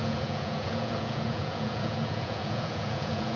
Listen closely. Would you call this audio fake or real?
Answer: fake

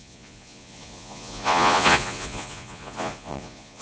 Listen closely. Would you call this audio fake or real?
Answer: fake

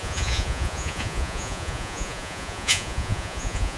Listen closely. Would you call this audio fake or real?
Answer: fake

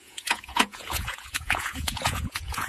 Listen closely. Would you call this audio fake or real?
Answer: fake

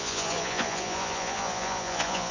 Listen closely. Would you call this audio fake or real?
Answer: fake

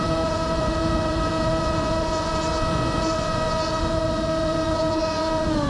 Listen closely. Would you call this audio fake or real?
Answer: fake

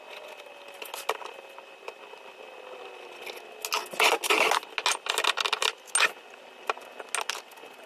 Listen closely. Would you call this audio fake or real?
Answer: real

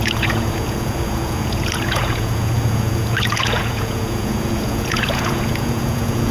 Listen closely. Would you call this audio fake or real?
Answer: fake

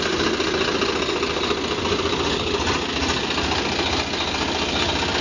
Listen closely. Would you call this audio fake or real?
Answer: real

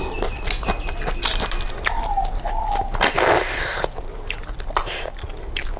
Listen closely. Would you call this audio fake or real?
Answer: real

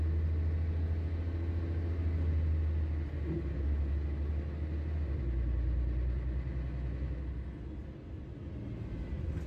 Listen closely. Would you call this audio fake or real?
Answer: real